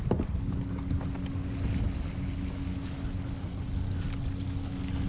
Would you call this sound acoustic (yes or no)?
yes